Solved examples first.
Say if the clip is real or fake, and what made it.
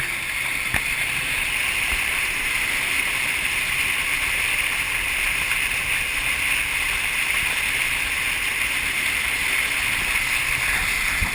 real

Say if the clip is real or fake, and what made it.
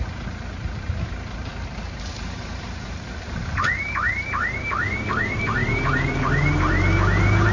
real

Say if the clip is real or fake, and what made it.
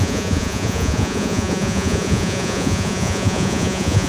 fake, vocoder, Vocos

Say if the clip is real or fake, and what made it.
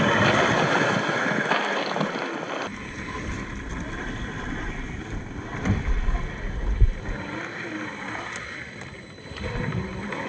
real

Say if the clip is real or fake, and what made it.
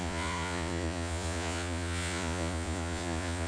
fake, vocoder, Vocos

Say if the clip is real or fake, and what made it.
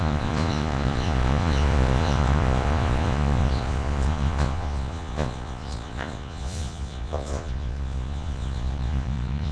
fake, vocoder, Vocos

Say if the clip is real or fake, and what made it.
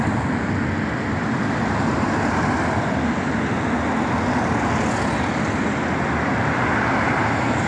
real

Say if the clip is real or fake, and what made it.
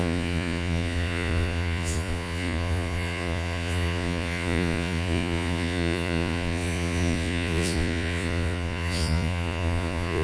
fake, vocoder, Vocos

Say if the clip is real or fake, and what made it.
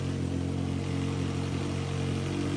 real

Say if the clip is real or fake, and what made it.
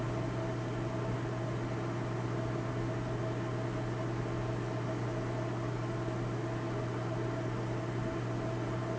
real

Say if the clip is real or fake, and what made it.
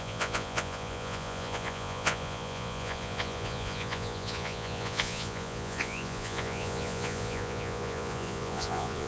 fake, vocoder, Vocos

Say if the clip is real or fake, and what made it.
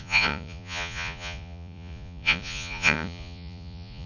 fake, vocoder, Vocos